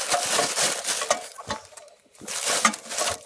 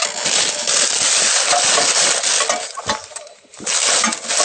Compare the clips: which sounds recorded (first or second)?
second